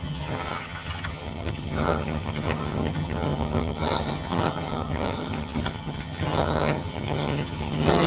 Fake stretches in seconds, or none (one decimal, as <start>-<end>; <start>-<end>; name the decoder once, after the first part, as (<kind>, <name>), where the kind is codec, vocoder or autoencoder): 0.0-8.1 (vocoder, HiFi-GAN)